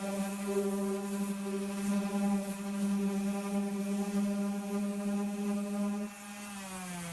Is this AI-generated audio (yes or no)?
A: no